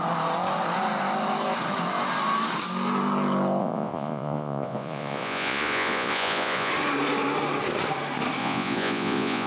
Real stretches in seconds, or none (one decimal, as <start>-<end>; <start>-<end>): 0.0-3.6; 6.7-8.4